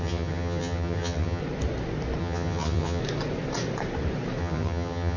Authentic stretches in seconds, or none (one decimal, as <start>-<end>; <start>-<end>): 1.4-2.2; 3.0-4.4